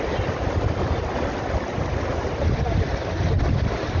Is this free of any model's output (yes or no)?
yes